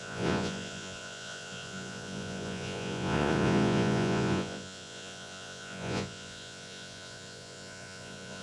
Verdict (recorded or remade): remade